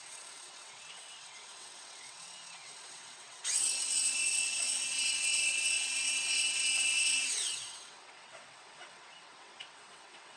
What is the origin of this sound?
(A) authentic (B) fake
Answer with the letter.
B